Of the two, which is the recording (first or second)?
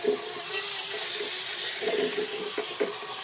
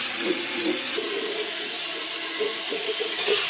first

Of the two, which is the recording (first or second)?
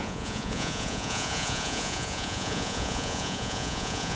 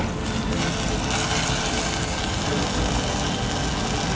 second